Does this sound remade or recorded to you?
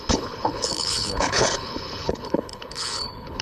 remade